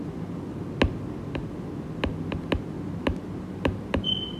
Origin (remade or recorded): recorded